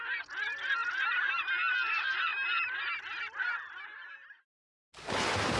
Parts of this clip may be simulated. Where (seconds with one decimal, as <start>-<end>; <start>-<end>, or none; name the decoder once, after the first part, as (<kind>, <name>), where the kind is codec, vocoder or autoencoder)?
none